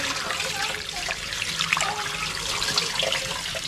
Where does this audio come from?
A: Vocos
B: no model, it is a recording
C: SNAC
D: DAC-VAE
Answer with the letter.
B